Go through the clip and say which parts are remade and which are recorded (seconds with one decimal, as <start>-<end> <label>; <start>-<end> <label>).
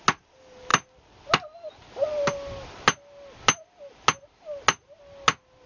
0.0-5.7 recorded